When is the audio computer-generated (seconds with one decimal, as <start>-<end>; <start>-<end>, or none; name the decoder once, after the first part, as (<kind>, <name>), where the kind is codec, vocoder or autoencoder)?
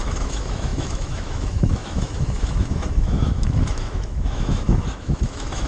0.0-5.7 (autoencoder, DAC-VAE)